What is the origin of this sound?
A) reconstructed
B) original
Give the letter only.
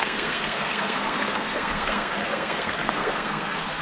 A